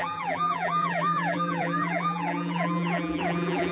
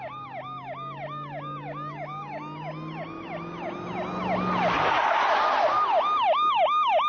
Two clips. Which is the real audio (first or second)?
second